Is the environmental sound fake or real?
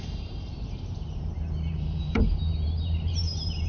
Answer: fake